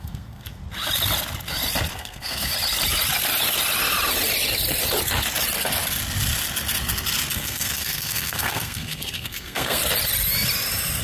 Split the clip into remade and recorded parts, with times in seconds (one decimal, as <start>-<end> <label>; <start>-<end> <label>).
0.0-0.6 remade; 0.6-1.9 recorded; 1.9-2.5 remade; 2.5-7.3 recorded; 7.3-9.8 remade; 9.8-11.0 recorded